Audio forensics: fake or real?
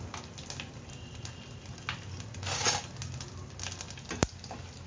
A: real